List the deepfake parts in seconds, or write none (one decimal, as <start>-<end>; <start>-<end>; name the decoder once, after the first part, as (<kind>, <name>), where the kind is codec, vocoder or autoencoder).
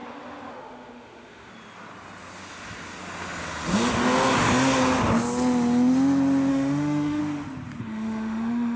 0.5-1.5 (autoencoder, DAC-VAE); 6.5-7.2; 7.8-8.8